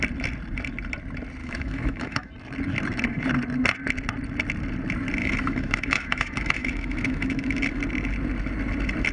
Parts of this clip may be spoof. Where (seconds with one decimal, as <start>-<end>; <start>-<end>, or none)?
1.4-2.3; 5.2-7.8